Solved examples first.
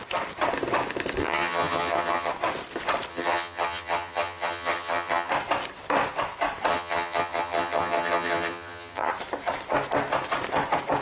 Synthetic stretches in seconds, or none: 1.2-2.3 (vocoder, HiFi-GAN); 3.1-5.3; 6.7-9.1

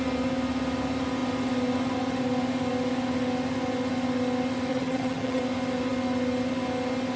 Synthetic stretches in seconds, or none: 4.7-5.4 (vocoder, HiFi-GAN)

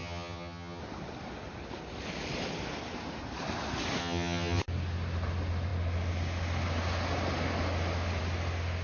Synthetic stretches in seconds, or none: 0.0-0.8 (vocoder, HiFi-GAN); 4.0-4.6

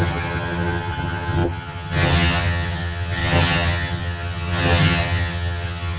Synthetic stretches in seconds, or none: 0.0-6.0 (vocoder, HiFi-GAN)